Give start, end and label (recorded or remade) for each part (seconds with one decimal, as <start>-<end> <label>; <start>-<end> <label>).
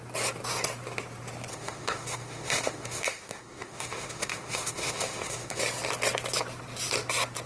0.0-1.5 recorded; 1.5-5.6 remade; 5.6-7.5 recorded